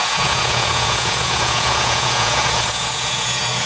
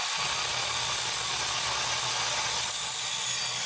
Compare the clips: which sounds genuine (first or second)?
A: second